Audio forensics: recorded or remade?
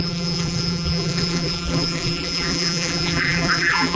remade